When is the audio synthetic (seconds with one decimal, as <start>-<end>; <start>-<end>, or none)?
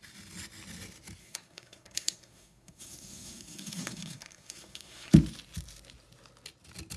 1.2-5.1